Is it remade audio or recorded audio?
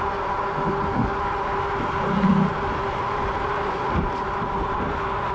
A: recorded